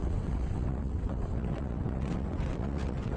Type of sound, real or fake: fake